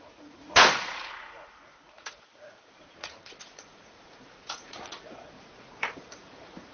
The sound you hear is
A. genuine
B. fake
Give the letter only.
B